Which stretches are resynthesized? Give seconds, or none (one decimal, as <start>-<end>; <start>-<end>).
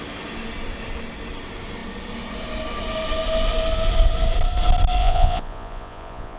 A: 5.0-6.4